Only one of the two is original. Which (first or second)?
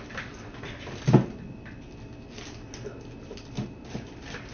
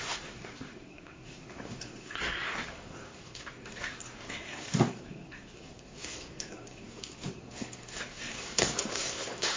first